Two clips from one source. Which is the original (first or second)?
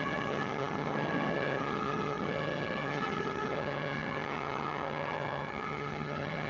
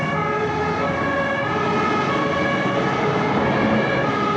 second